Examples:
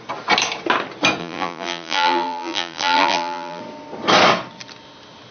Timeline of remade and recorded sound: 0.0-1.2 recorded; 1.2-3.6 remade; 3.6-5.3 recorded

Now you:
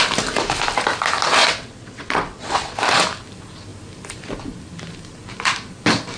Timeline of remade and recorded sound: 0.0-1.4 recorded; 1.4-2.8 remade; 2.8-6.2 recorded

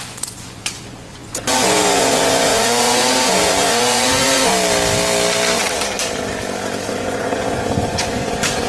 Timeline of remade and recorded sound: 0.0-4.5 remade; 4.5-6.9 recorded; 6.9-8.7 remade